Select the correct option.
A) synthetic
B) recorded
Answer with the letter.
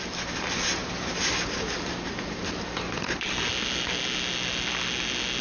B